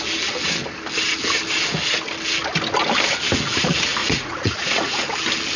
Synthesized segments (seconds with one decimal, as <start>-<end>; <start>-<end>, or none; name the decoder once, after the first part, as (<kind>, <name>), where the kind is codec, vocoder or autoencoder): 4.0-5.0 (vocoder, Vocos)